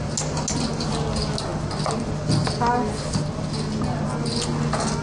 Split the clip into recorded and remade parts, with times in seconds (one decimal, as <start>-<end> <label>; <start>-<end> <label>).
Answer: 0.0-5.0 recorded